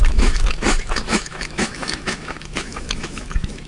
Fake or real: fake